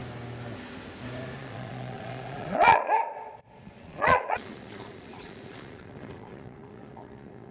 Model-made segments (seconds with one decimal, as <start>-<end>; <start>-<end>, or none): 1.4-7.5